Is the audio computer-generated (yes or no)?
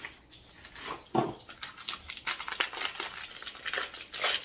no